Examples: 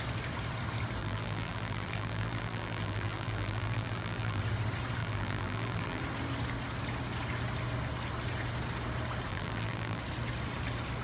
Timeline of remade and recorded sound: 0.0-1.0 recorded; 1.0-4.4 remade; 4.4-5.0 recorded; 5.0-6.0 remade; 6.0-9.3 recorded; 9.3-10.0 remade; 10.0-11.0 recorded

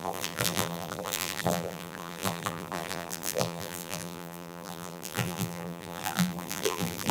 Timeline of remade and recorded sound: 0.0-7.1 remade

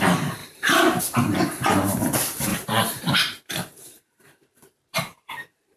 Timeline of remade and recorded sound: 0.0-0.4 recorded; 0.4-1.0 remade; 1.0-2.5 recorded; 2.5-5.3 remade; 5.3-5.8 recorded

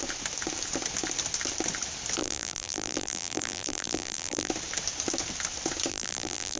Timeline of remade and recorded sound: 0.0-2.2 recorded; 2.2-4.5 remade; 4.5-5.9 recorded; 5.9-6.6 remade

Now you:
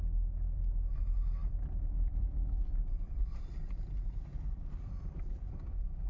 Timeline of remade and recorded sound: 0.0-1.4 recorded; 1.4-3.5 remade; 3.5-4.3 recorded; 4.3-5.4 remade; 5.4-6.1 recorded

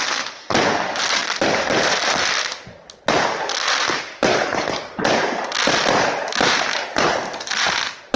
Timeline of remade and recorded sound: 0.0-1.2 recorded; 1.2-2.4 remade; 2.4-8.2 recorded